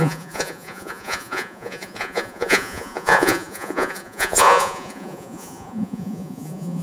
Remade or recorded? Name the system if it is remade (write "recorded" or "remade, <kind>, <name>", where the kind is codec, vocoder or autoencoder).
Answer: remade, vocoder, Vocos